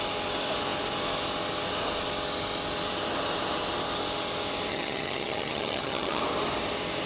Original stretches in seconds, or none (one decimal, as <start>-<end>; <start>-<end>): 0.0-4.7; 6.2-7.1